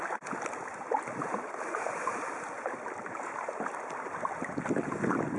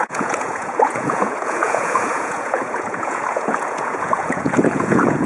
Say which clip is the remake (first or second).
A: second